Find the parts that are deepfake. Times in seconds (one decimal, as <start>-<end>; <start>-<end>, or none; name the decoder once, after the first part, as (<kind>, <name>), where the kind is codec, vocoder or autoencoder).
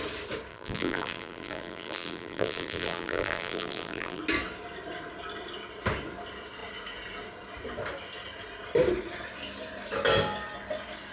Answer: 0.5-4.2 (vocoder, BigVGAN v2)